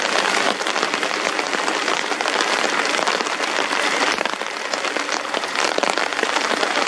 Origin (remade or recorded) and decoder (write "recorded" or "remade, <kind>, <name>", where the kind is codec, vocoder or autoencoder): remade, vocoder, BigVGAN v2